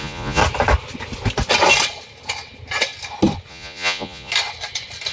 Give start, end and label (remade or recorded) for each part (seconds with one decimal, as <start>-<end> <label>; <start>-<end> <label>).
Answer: 0.0-0.4 remade; 0.4-3.5 recorded; 3.5-4.3 remade; 4.3-5.1 recorded